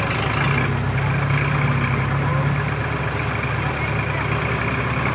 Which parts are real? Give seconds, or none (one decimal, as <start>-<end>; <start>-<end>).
0.0-5.1